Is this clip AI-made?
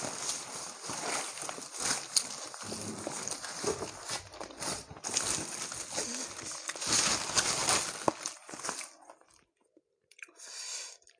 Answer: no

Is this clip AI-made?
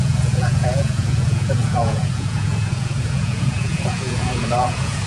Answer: yes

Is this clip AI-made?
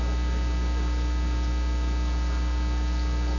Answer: no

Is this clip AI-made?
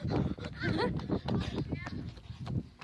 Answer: no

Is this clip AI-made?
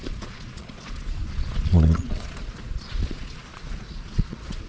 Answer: yes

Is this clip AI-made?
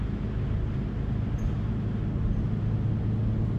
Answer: no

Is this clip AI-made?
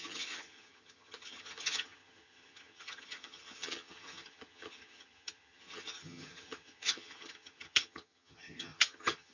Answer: yes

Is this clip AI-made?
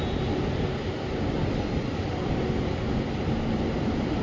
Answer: no